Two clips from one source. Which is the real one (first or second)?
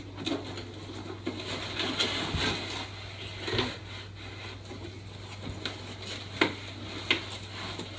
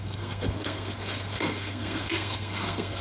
first